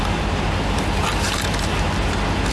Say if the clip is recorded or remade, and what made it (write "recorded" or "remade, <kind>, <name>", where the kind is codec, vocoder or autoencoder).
recorded